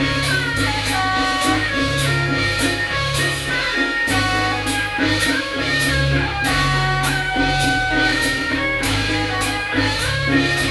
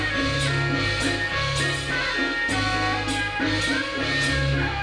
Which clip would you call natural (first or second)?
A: second